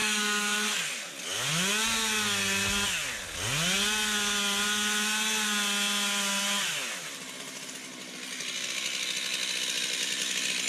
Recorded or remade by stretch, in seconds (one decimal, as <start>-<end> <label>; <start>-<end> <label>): 0.0-1.1 remade; 1.1-10.7 recorded